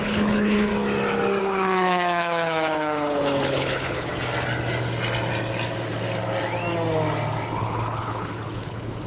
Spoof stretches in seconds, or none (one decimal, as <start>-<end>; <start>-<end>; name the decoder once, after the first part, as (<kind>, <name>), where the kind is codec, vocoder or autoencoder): 0.0-0.7 (codec, HILCodec); 1.4-4.1; 7.6-9.1